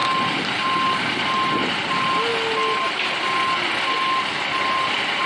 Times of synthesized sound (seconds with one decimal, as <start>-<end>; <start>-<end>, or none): none